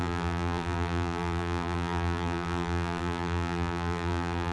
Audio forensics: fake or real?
fake